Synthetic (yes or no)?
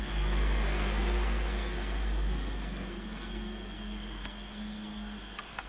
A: yes